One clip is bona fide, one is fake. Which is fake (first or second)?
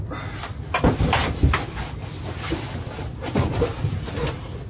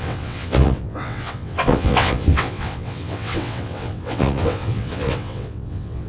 second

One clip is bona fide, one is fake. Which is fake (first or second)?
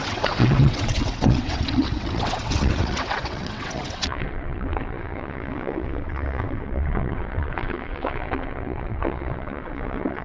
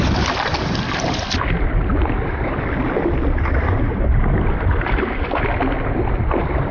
first